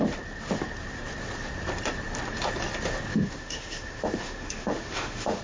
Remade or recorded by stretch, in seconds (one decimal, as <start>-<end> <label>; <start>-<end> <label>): 0.0-3.1 recorded; 3.1-5.4 remade